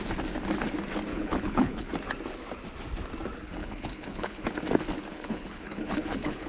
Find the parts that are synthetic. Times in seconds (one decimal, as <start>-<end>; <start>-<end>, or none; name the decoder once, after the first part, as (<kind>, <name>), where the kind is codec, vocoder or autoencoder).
1.1-1.9 (codec, HILCodec); 3.6-4.5; 5.1-6.5